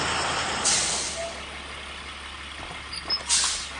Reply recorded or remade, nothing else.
recorded